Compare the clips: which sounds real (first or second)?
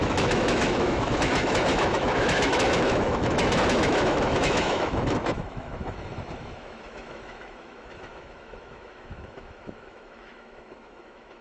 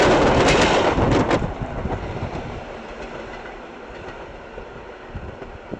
second